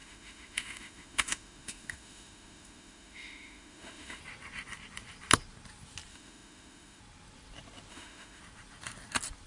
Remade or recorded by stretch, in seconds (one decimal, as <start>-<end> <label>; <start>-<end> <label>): 0.0-4.2 remade; 4.2-6.1 recorded; 6.1-7.0 remade; 7.0-7.9 recorded; 7.9-8.4 remade; 8.4-9.5 recorded